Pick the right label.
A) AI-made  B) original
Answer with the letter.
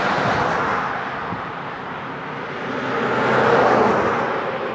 B